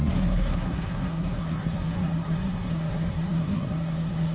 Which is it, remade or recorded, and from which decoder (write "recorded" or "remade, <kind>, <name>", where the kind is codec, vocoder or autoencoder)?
remade, codec, SNAC